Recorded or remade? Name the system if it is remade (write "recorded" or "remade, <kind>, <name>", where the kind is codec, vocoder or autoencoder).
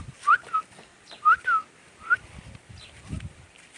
remade, vocoder, BigVGAN v2